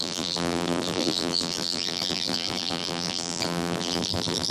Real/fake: fake